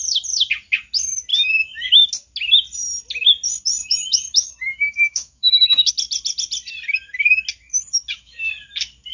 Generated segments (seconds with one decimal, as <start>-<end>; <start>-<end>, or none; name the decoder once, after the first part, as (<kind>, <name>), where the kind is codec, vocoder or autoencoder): 1.3-2.0 (autoencoder, DAC-VAE); 3.8-5.9; 7.7-8.5